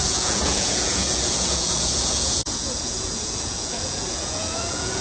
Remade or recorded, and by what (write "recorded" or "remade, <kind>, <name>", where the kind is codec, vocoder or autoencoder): remade, vocoder, Vocos